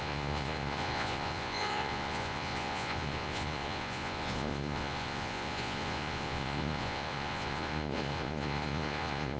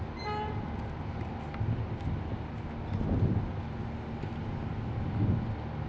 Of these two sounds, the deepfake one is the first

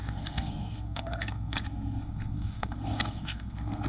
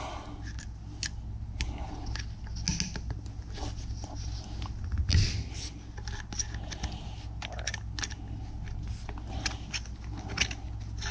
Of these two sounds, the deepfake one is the first